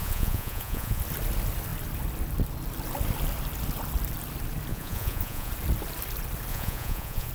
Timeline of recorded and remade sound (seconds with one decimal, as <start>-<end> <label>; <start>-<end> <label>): 0.0-1.0 remade; 1.0-4.7 recorded; 4.7-5.5 remade; 5.5-6.5 recorded; 6.5-7.3 remade